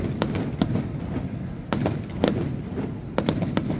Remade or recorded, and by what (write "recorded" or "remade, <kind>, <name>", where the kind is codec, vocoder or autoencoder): recorded